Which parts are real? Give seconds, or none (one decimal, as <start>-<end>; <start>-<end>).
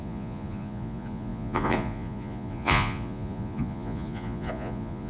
none